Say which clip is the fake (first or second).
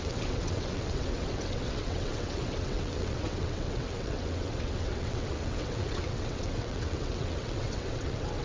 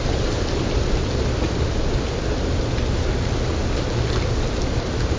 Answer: first